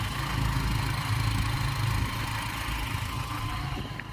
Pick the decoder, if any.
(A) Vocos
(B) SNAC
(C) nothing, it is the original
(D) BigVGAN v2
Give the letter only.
C